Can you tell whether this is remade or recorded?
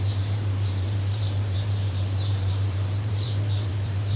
remade